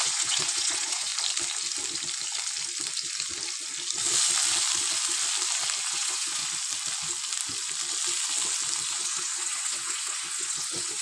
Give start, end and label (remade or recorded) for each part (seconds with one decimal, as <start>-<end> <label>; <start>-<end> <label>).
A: 0.0-1.1 remade; 1.1-5.9 recorded; 5.9-6.4 remade; 6.4-8.9 recorded; 8.9-11.0 remade